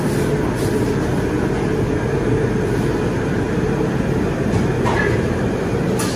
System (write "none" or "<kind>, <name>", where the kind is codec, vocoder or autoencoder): vocoder, BigVGAN v2